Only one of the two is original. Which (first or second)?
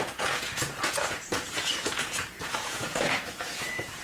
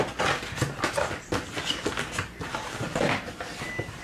second